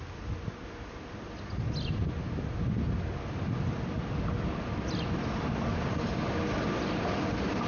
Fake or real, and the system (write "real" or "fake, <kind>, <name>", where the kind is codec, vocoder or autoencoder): real